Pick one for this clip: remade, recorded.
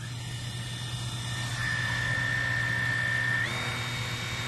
recorded